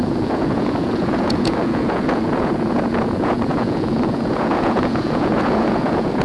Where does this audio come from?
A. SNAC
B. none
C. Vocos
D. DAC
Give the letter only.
C